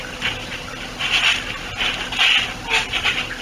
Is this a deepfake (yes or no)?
no